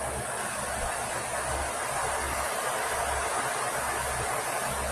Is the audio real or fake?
real